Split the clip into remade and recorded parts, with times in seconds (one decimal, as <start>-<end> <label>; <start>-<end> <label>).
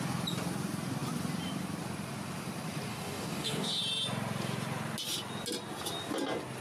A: 0.0-2.9 recorded; 2.9-3.8 remade; 3.8-6.6 recorded